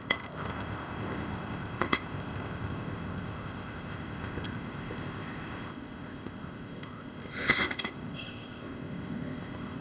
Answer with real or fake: fake